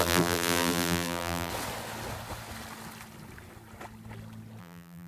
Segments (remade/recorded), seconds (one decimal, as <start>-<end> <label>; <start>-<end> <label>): 0.0-1.5 remade; 1.5-4.6 recorded; 4.6-5.1 remade

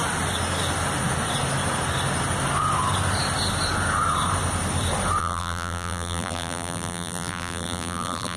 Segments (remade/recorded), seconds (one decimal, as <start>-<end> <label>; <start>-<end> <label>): 0.0-5.2 recorded; 5.2-8.4 remade

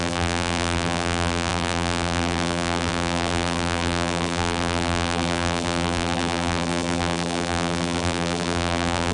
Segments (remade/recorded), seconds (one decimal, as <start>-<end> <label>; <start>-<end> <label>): 0.0-9.1 remade

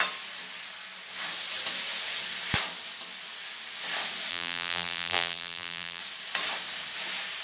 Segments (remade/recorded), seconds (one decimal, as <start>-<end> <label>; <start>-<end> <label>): 0.0-4.3 recorded; 4.3-6.0 remade; 6.0-7.4 recorded